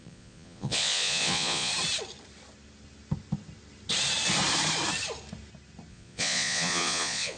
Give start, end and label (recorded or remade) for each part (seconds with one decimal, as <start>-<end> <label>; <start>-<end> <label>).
0.0-1.7 remade; 1.7-5.9 recorded; 5.9-7.4 remade